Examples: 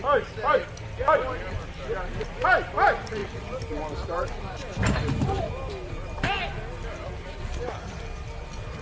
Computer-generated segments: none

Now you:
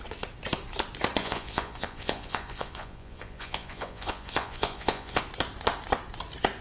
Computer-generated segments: 1.2-5.2 (vocoder, Vocos)

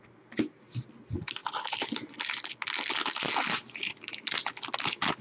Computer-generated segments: none

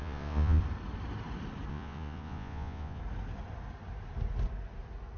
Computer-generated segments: 0.0-0.6 (vocoder, Vocos); 1.7-3.0

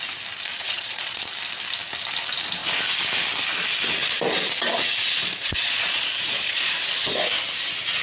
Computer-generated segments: 0.5-1.2 (vocoder, Vocos); 5.2-6.7